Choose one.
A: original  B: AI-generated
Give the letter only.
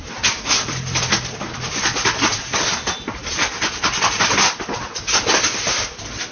A